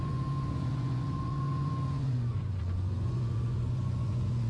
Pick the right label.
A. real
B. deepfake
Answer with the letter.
B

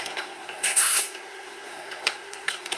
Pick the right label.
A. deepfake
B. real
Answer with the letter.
A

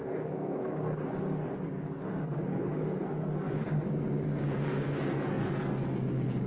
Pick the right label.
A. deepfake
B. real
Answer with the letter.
A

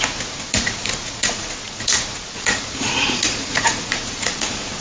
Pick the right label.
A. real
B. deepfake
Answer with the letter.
B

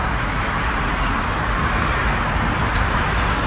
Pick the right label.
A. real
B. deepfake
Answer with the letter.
A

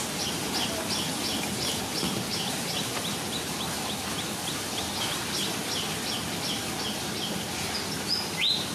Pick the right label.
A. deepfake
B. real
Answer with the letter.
B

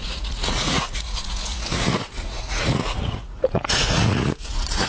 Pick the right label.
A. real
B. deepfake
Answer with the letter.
B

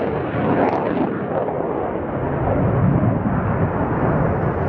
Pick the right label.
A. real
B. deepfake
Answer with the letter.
A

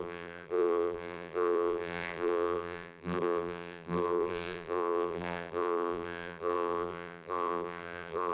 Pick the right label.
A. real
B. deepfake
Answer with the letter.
B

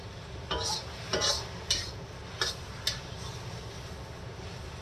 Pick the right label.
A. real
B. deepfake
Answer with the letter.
A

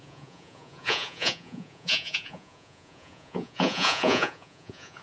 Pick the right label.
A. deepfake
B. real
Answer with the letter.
A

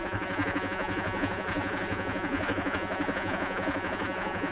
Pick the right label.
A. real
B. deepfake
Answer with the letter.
B